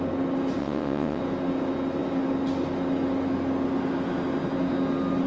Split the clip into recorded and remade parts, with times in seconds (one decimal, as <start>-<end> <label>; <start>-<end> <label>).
0.0-0.6 recorded; 0.6-1.2 remade; 1.2-5.3 recorded